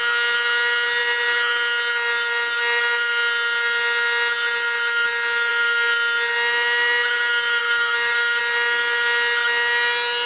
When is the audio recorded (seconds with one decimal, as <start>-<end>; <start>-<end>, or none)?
0.0-7.6; 8.4-10.3